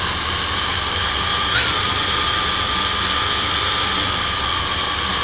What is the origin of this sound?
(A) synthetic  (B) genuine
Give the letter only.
B